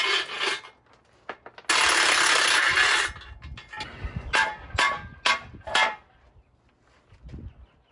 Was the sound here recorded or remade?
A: recorded